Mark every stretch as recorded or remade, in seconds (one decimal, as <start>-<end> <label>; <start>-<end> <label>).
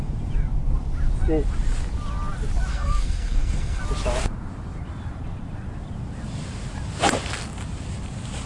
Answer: 0.0-2.7 recorded; 2.7-3.8 remade; 3.8-8.5 recorded